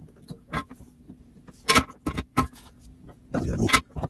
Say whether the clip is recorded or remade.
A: remade